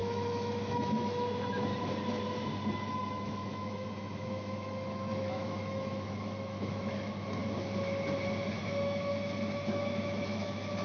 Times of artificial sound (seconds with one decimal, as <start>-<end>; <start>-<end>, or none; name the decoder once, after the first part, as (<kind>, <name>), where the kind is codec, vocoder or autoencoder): 0.0-1.7 (autoencoder, DAC-VAE); 2.7-7.4; 8.6-10.8